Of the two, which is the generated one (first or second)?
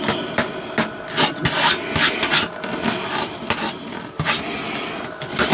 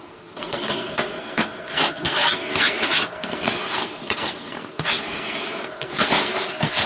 second